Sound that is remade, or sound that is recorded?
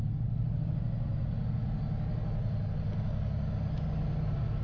recorded